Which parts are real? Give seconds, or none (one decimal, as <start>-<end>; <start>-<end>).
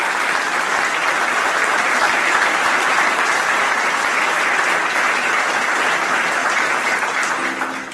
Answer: 0.0-7.9